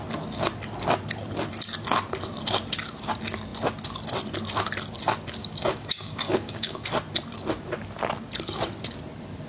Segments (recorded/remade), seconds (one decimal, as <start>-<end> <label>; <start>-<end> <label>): 0.0-5.4 recorded; 5.4-6.8 remade; 6.8-9.5 recorded